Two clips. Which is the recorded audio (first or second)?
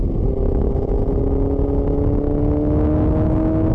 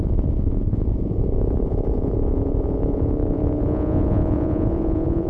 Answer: first